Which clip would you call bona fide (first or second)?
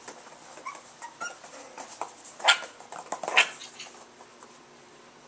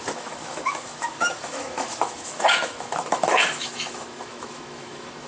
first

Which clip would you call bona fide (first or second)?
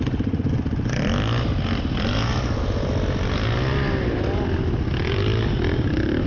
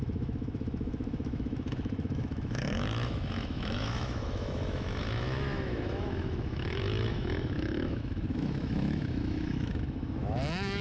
first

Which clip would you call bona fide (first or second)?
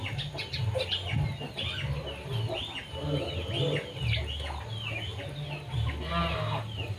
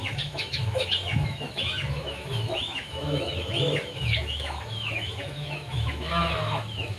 first